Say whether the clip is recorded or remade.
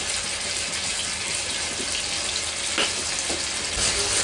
recorded